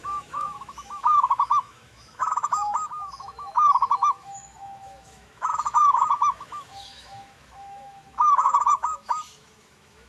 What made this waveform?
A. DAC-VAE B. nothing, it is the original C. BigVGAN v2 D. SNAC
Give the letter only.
A